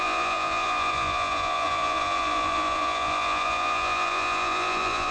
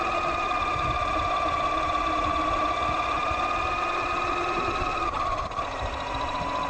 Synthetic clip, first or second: first